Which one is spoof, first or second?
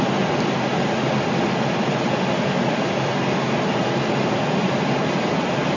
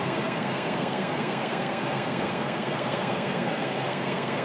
second